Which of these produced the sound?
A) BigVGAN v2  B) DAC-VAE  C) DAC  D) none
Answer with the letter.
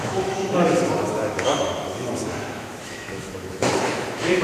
B